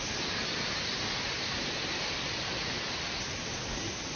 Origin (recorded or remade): recorded